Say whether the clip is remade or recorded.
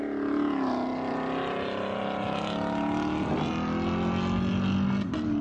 recorded